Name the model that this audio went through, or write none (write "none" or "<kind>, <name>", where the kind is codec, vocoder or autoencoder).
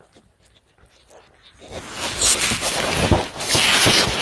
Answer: none